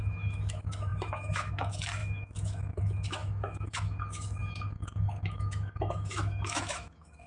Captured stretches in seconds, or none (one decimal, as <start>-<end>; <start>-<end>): none